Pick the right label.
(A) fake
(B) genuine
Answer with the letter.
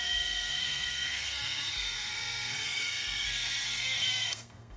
A